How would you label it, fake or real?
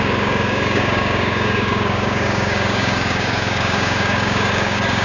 fake